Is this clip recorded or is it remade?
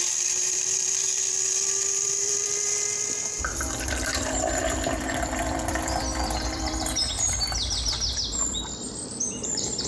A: remade